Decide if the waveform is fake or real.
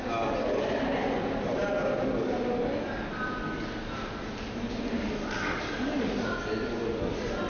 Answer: real